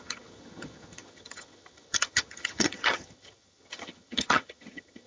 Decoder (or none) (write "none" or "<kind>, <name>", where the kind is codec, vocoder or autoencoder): vocoder, HiFi-GAN